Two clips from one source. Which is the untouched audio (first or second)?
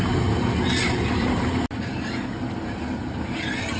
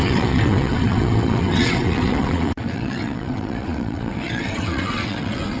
first